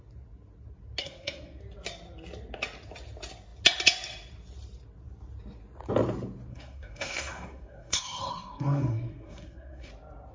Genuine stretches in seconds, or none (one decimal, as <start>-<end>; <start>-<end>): 0.0-1.0; 1.6-6.5; 9.9-10.3